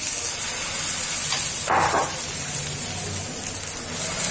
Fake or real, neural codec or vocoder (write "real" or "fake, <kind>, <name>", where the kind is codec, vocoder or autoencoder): real